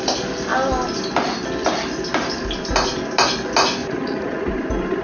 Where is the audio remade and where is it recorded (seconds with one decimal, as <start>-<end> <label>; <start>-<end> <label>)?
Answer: 0.0-3.8 recorded; 3.8-4.5 remade; 4.5-5.0 recorded